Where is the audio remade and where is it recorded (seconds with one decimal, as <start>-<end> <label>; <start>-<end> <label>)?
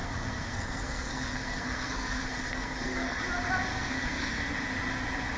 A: 0.0-3.2 remade; 3.2-3.7 recorded; 3.7-4.4 remade; 4.4-5.4 recorded